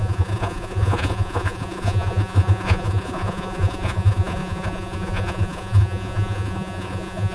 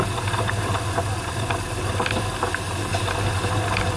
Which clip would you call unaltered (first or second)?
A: second